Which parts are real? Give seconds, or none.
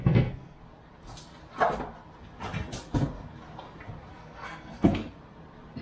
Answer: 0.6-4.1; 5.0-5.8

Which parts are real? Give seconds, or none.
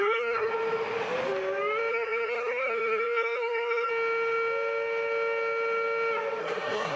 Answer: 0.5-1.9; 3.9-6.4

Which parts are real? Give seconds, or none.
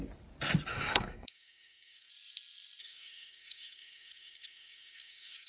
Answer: 0.0-0.7; 2.1-2.8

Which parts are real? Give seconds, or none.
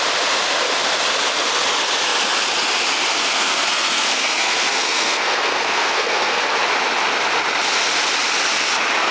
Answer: 0.0-3.2; 6.4-9.1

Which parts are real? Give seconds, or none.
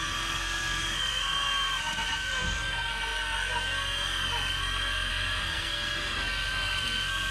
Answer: none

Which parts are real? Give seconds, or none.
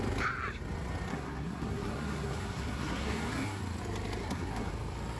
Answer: 0.0-1.1; 3.6-4.2; 4.7-5.2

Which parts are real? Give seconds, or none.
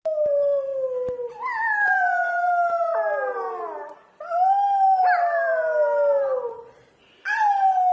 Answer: 0.0-7.9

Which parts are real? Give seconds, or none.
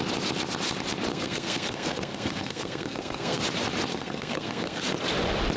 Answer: 0.0-1.1; 3.4-3.9; 4.8-5.6